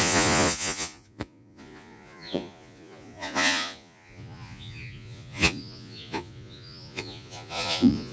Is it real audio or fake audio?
fake